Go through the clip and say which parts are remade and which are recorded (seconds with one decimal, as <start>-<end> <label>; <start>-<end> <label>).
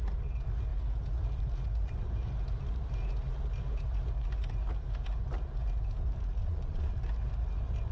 0.0-6.4 recorded; 6.4-6.9 remade; 6.9-7.9 recorded